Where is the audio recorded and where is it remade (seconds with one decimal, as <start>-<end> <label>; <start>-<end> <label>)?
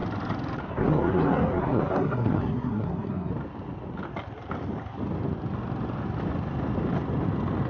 0.0-0.7 recorded; 0.7-3.3 remade; 3.3-7.7 recorded